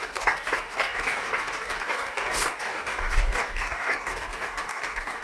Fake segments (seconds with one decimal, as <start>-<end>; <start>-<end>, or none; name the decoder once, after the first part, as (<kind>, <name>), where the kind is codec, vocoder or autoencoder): 0.0-5.2 (codec, DAC)